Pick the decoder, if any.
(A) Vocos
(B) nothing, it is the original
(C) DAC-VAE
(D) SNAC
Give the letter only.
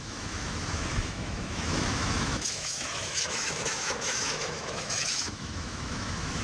C